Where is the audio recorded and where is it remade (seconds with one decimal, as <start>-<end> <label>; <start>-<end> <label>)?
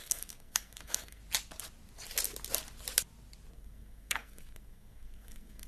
0.0-1.2 remade; 1.2-3.5 recorded; 3.5-5.7 remade